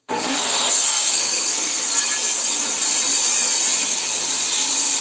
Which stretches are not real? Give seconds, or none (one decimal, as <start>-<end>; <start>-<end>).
0.0-1.9